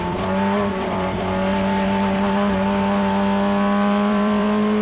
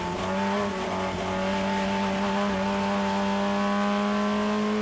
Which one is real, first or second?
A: second